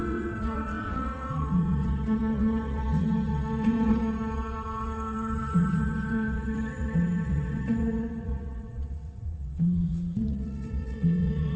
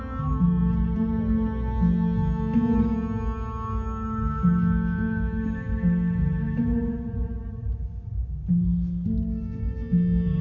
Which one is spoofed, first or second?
first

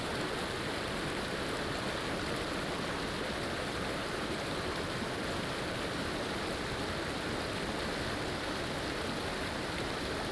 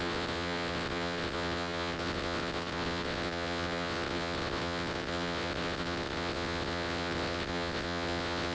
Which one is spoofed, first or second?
second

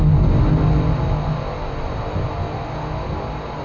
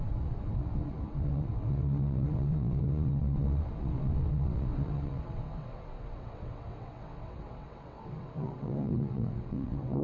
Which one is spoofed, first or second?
second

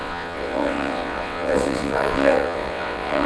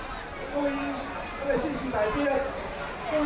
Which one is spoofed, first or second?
first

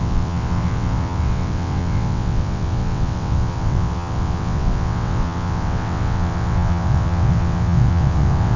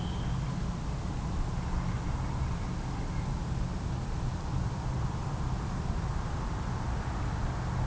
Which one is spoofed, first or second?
first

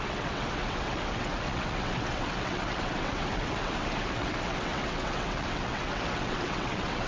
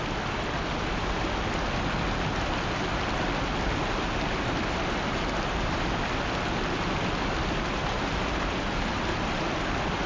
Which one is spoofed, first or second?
first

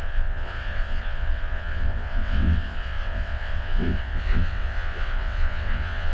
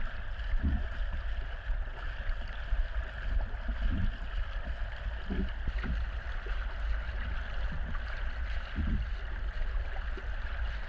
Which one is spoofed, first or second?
first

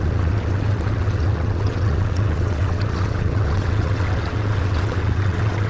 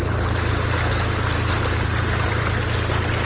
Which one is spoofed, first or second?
first